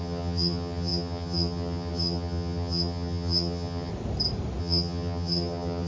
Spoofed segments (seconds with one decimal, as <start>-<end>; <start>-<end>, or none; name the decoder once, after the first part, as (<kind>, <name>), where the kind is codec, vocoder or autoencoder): 0.0-3.9 (vocoder, HiFi-GAN); 4.6-5.9